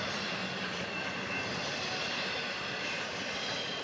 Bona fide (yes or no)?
no